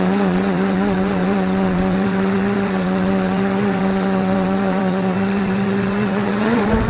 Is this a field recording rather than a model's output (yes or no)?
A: no